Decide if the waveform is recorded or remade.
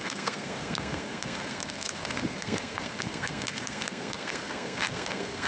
remade